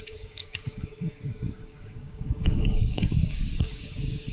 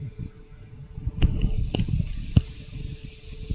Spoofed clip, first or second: first